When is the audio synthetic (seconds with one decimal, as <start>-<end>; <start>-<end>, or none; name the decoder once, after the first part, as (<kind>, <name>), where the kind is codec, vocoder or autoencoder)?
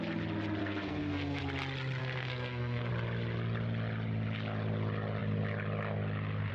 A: 0.6-1.4 (codec, SNAC); 2.0-2.9